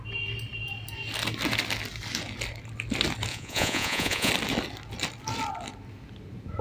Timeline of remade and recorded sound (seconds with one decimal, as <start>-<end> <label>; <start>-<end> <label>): 0.0-3.3 recorded; 3.3-4.3 remade; 4.3-6.6 recorded